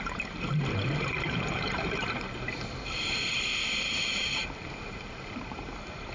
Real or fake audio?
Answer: fake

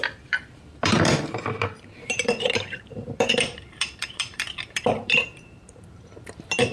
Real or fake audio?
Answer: fake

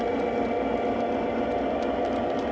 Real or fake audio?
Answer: real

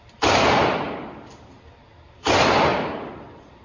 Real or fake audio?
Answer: fake